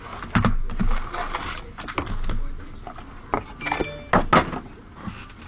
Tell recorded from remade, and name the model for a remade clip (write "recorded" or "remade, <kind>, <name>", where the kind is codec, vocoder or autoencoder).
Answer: recorded